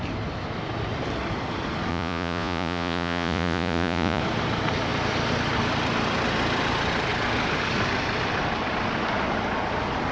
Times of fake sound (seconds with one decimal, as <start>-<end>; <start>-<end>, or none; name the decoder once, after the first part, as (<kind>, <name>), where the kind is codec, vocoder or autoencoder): 1.9-4.2 (vocoder, Vocos)